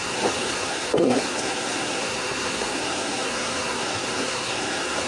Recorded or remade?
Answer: remade